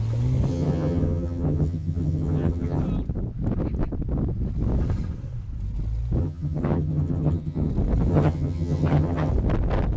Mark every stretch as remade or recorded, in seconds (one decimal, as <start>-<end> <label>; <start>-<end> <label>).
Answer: 0.0-0.5 recorded; 0.5-2.8 remade; 2.8-6.2 recorded; 6.2-7.7 remade; 7.7-8.1 recorded; 8.1-9.3 remade; 9.3-10.0 recorded